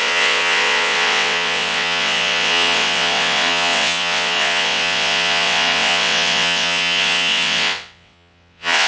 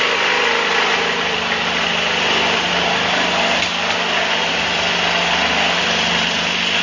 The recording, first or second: second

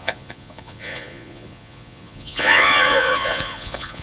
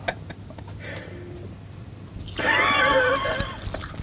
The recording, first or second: second